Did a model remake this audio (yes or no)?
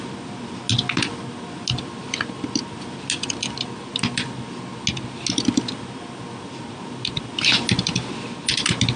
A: no